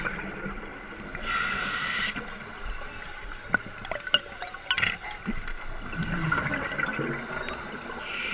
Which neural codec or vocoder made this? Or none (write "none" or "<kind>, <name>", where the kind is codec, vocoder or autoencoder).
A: none